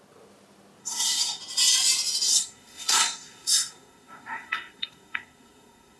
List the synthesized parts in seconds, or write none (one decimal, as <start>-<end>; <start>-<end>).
0.8-1.4; 2.3-6.0